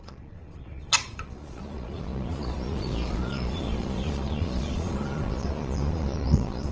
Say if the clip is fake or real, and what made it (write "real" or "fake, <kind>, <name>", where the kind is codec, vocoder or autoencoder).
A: fake, vocoder, Vocos